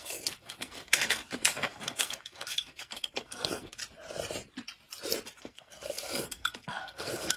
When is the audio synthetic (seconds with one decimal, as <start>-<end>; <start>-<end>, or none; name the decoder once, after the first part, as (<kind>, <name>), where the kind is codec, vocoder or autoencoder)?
0.0-3.8 (codec, SNAC); 5.4-7.4